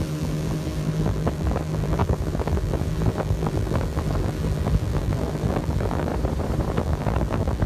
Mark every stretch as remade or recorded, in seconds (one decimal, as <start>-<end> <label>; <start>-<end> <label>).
0.0-6.1 remade; 6.1-6.7 recorded; 6.7-7.7 remade